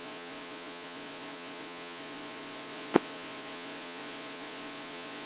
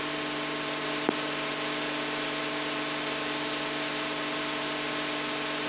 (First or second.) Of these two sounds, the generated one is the first